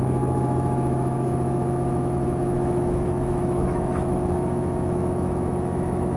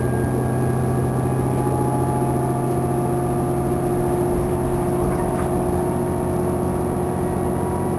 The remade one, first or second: first